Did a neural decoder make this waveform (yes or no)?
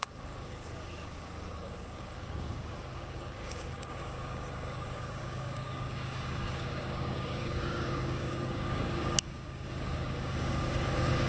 yes